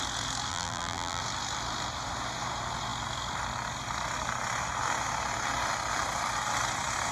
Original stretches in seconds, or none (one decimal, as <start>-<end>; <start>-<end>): 0.0-0.5; 1.2-7.1